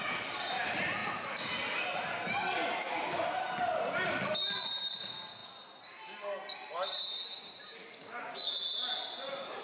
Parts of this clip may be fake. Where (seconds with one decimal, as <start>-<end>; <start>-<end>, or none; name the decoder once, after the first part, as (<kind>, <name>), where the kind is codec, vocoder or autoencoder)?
7.8-8.5 (codec, DAC)

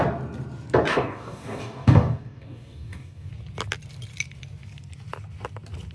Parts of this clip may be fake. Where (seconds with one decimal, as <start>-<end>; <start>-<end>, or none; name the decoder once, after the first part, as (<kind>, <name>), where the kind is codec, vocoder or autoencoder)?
0.9-3.3 (codec, DAC)

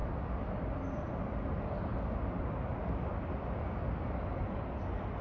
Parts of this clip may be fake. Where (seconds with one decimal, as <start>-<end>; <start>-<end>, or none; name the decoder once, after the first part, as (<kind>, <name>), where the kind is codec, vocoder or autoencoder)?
none

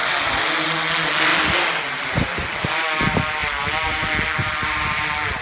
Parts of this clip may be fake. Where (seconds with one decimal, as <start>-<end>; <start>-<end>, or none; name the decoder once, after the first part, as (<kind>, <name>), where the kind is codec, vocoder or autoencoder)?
none